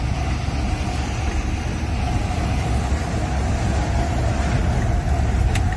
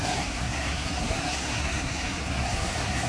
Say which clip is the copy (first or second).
second